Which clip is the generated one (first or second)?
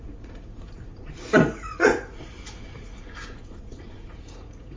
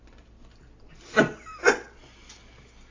first